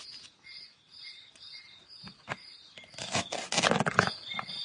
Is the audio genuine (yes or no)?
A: yes